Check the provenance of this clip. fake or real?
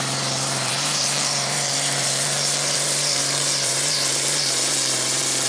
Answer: fake